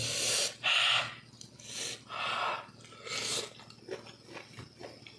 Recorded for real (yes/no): yes